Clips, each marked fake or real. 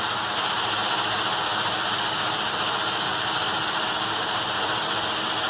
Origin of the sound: real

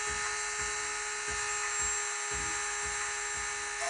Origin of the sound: real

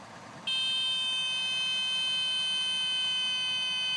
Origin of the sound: real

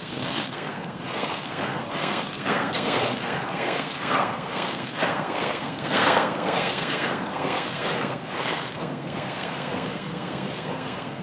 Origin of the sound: fake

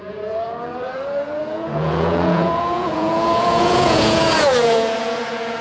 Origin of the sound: fake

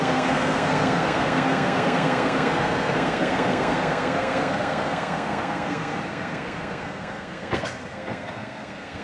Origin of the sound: fake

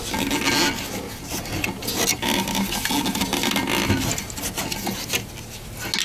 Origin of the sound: real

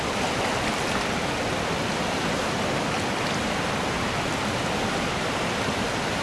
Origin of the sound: real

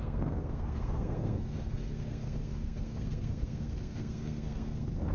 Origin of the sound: fake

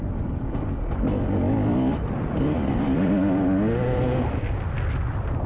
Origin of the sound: real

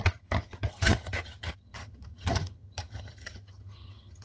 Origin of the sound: fake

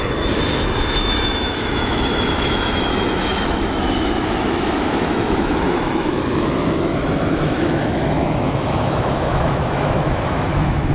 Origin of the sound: fake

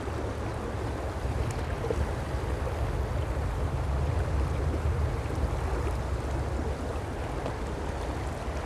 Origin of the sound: real